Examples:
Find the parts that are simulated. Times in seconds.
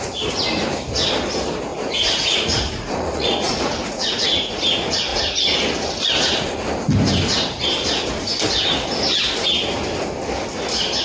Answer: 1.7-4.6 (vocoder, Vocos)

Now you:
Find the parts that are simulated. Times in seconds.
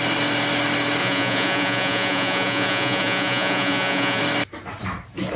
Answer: 1.0-4.2 (vocoder, Vocos)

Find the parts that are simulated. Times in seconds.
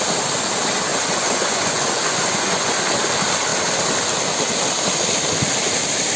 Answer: 0.9-2.8 (vocoder, Vocos)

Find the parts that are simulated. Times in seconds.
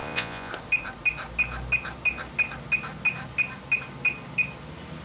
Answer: 0.0-0.5 (vocoder, Vocos)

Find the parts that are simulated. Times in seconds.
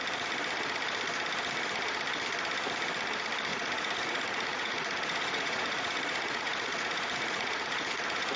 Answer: 3.5-8.4 (vocoder, Vocos)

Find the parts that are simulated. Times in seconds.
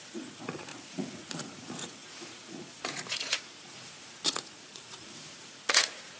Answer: 0.0-6.2 (vocoder, Vocos)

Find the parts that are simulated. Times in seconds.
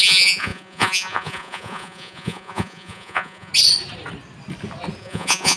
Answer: 0.0-3.5 (vocoder, Vocos); 5.0-5.6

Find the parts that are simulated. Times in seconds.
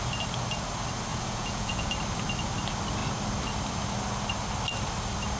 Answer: 1.1-1.9 (vocoder, Vocos)